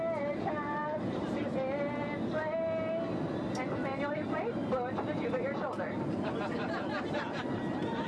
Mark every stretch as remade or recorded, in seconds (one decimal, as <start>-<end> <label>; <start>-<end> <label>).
0.0-0.8 recorded; 0.8-1.4 remade; 1.4-8.1 recorded